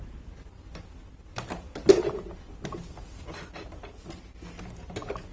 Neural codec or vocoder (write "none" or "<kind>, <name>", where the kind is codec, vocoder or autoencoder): none